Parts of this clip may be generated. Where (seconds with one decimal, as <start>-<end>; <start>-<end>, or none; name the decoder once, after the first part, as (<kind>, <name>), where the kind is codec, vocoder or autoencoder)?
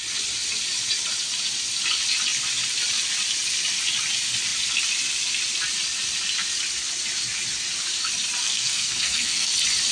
8.4-9.5 (codec, SNAC)